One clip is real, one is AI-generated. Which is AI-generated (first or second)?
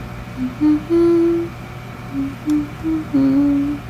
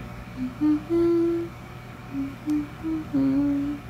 second